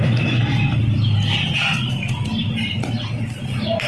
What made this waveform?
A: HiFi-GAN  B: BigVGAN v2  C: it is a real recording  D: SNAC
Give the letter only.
C